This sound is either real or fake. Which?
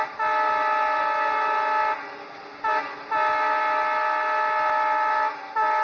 real